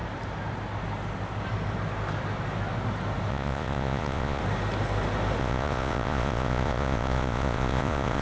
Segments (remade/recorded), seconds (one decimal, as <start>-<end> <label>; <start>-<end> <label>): 0.0-3.3 recorded; 3.3-4.4 remade; 4.4-5.4 recorded; 5.4-8.2 remade